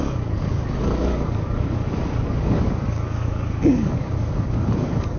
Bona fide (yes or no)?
no